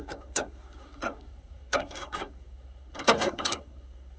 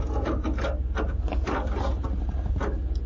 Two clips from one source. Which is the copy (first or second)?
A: first